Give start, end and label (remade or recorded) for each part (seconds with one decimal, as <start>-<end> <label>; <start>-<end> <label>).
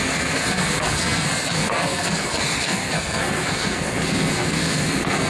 0.0-5.3 remade